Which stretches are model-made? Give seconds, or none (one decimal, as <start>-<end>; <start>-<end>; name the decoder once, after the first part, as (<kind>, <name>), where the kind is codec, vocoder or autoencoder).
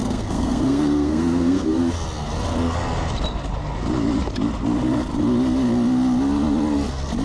0.0-1.8 (codec, SNAC)